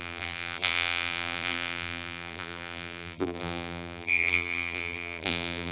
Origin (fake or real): fake